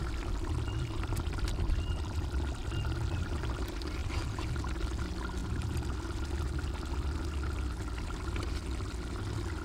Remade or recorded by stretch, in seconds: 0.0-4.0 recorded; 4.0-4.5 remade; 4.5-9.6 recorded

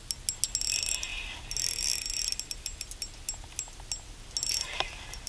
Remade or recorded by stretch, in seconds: 0.0-5.3 recorded

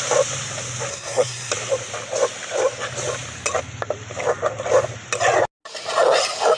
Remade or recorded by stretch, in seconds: 0.0-0.9 recorded; 0.9-1.5 remade; 1.5-6.6 recorded

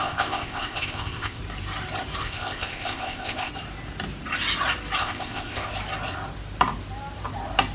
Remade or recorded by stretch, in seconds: 0.0-1.4 remade; 1.4-2.2 recorded; 2.2-3.5 remade; 3.5-5.0 recorded; 5.0-5.7 remade; 5.7-7.7 recorded